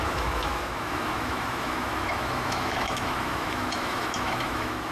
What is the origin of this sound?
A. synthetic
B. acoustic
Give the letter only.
A